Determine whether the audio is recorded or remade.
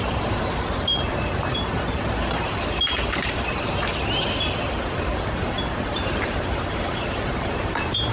remade